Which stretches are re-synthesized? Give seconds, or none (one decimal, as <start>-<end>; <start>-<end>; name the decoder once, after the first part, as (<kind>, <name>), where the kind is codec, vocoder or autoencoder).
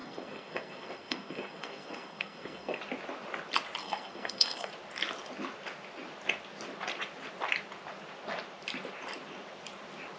0.0-2.8 (codec, SNAC); 3.8-4.7